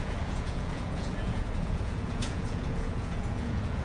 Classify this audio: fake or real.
fake